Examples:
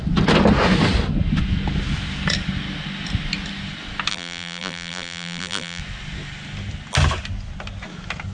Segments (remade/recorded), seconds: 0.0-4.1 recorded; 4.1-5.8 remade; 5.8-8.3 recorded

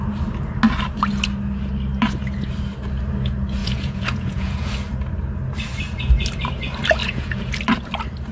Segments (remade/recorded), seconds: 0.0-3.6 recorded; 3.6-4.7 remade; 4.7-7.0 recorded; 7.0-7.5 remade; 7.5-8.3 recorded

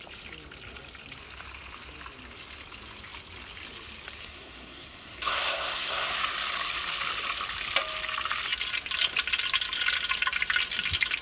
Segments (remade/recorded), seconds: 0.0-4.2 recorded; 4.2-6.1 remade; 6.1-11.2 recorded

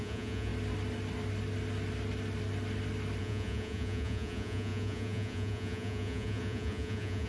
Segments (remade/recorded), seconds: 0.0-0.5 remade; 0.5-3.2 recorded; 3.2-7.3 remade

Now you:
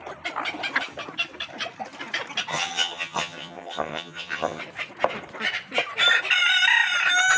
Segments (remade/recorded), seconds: 0.0-2.5 recorded; 2.5-4.6 remade; 4.6-7.4 recorded

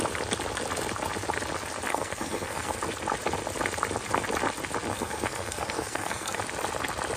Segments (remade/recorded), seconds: 0.0-1.9 recorded; 1.9-2.8 remade; 2.8-4.9 recorded; 4.9-6.4 remade; 6.4-7.2 recorded